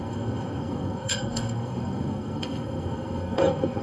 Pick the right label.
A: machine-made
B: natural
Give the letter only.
A